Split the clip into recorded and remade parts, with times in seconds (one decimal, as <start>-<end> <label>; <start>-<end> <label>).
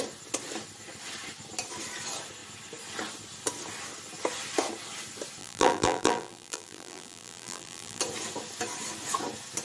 0.0-5.4 recorded; 5.4-8.0 remade; 8.0-9.6 recorded